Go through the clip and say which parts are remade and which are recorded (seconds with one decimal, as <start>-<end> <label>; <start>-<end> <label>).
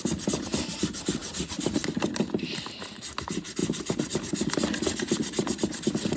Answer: 0.0-6.2 recorded